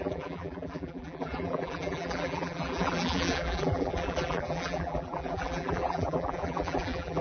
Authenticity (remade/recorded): remade